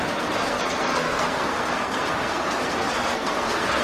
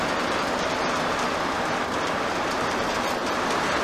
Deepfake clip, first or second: first